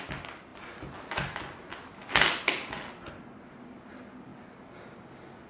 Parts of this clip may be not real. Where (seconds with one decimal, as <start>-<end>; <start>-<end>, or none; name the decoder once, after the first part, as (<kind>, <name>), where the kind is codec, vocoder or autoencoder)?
4.3-5.0 (vocoder, BigVGAN v2)